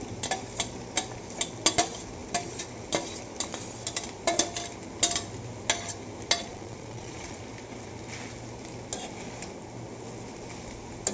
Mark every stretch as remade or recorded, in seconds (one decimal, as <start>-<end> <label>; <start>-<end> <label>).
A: 0.0-6.4 recorded; 6.4-7.4 remade; 7.4-11.1 recorded

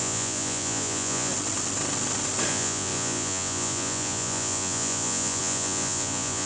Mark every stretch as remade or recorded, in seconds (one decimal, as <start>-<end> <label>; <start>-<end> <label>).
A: 0.0-1.3 remade; 1.3-2.5 recorded; 2.5-6.5 remade

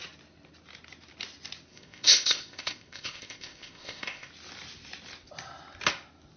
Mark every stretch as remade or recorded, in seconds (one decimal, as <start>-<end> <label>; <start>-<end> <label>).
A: 0.0-1.7 recorded; 1.7-4.3 remade; 4.3-6.4 recorded